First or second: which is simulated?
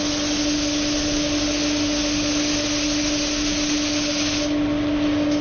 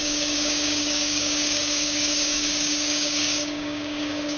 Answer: second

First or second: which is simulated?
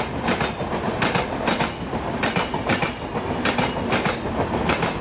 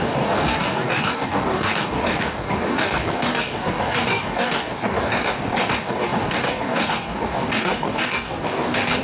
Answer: second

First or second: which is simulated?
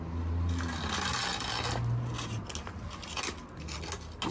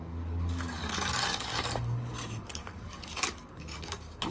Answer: second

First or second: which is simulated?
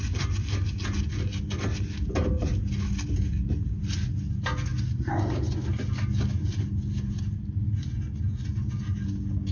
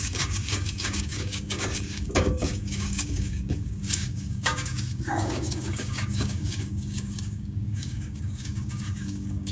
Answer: second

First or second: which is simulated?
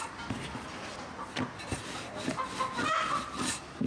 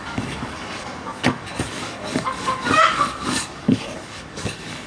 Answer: second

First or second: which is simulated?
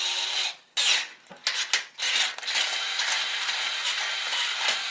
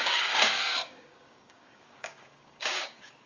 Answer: second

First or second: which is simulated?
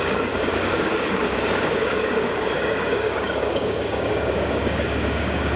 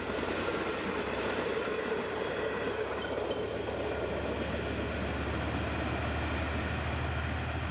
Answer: first